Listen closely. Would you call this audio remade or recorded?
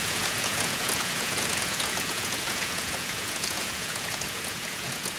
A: remade